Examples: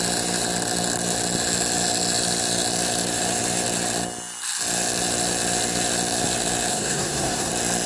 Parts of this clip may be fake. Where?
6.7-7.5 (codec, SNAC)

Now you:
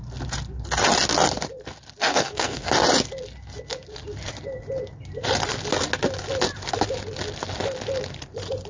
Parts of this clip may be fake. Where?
2.1-2.7 (codec, SNAC)